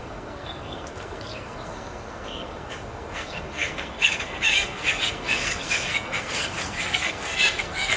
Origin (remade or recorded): remade